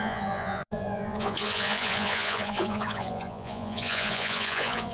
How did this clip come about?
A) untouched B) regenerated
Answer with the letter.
B